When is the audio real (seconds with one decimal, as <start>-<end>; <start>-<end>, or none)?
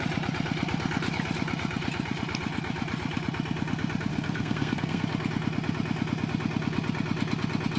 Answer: 0.0-4.1; 5.0-7.8